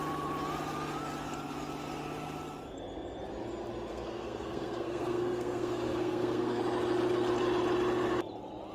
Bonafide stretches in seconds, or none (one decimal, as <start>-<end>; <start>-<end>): 0.0-3.9; 6.6-8.7